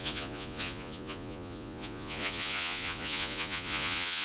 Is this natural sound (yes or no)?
no